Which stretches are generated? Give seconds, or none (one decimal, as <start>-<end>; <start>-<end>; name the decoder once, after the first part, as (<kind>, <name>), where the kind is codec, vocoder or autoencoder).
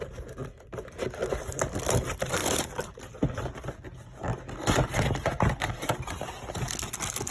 none